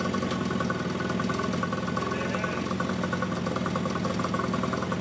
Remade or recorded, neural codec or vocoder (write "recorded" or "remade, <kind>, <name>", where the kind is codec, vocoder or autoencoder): recorded